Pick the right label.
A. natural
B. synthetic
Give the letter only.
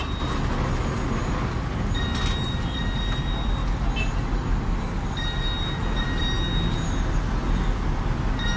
A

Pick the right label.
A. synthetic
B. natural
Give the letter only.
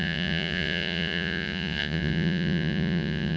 A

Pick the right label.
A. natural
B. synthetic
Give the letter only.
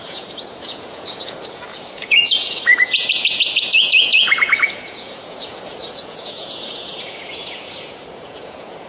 B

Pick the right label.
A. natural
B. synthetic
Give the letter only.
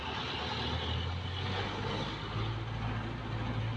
A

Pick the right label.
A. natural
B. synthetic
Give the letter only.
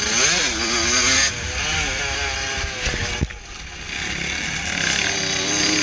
A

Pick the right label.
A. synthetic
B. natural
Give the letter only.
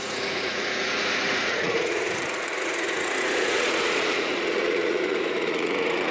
A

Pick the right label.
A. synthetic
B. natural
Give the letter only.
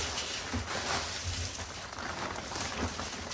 B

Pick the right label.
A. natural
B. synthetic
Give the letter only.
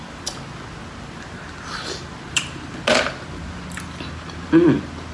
A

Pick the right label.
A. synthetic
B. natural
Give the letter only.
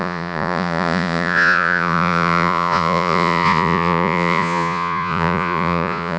A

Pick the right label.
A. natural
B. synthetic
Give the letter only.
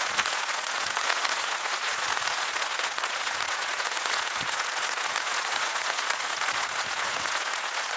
B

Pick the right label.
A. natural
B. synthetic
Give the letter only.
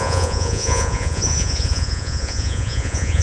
B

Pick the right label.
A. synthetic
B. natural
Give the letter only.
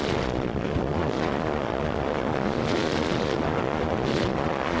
A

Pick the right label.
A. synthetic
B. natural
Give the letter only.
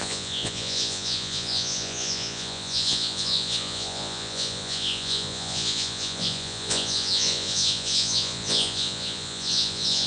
A